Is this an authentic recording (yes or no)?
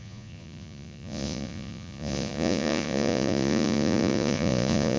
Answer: no